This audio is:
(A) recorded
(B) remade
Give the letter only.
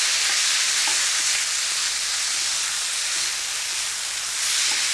A